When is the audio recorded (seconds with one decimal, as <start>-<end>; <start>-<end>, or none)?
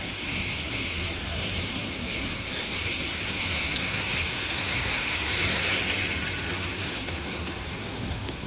5.8-6.5